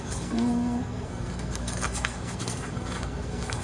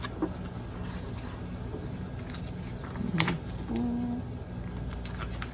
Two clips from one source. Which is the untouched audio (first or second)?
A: second